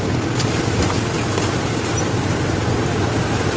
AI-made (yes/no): no